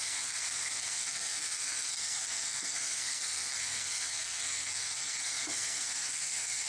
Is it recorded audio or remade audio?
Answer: remade